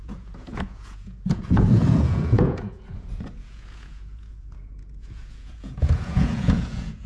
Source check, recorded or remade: remade